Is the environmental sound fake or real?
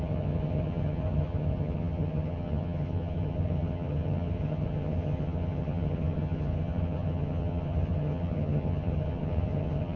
fake